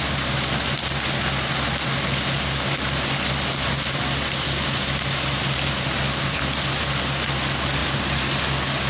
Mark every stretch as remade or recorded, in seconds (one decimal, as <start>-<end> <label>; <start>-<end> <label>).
0.0-8.9 recorded